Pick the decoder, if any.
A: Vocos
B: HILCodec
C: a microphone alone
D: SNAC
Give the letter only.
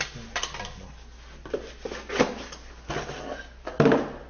C